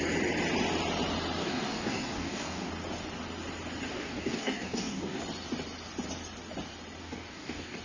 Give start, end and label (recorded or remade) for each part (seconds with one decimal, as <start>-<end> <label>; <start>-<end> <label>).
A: 0.0-1.4 recorded; 1.4-2.7 remade; 2.7-3.9 recorded; 3.9-5.2 remade; 5.2-7.0 recorded; 7.0-7.8 remade